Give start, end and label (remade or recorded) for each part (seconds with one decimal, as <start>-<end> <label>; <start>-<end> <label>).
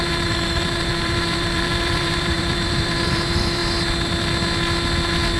0.0-3.6 remade; 3.6-5.4 recorded